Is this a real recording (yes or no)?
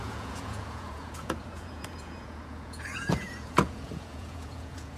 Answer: no